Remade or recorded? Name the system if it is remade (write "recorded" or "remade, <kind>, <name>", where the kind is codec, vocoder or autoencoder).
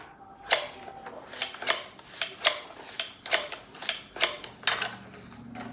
recorded